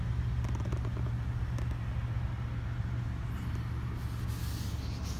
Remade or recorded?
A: recorded